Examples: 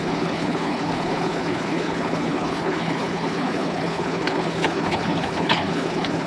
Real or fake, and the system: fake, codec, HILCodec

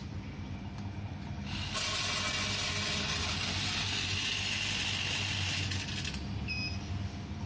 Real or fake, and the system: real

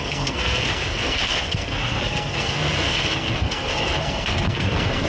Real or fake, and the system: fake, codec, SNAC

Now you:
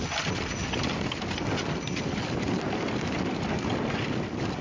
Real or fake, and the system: real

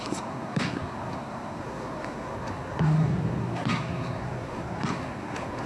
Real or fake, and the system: fake, codec, SNAC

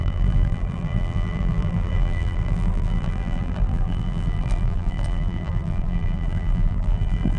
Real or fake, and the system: fake, vocoder, BigVGAN v2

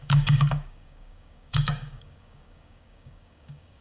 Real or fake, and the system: fake, codec, DAC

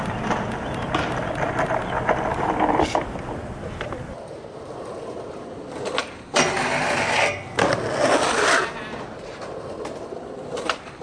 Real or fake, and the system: real